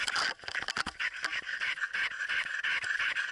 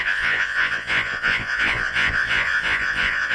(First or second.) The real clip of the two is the first